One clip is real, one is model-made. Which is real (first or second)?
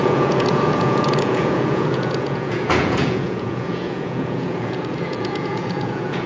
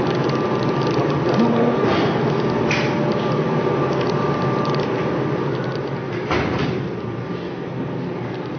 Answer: second